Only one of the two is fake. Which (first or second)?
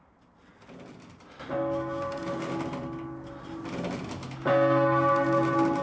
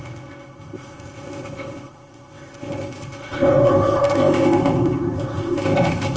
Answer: second